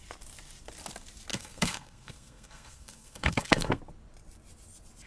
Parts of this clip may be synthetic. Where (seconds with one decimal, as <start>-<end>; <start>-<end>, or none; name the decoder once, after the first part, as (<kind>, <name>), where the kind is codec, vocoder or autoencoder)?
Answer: 1.3-3.8 (codec, SNAC)